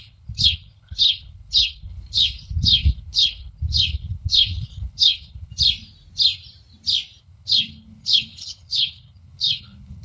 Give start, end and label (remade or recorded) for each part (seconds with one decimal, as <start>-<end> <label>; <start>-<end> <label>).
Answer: 0.0-5.5 remade; 5.5-7.2 recorded; 7.2-10.0 remade